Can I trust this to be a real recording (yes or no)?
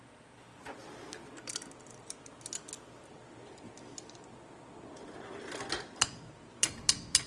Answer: yes